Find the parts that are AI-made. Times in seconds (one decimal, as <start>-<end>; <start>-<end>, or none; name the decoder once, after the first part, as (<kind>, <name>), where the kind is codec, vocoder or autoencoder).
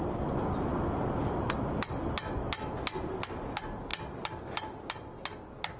none